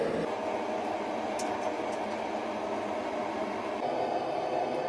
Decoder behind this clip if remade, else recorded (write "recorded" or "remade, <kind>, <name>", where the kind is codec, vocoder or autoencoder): recorded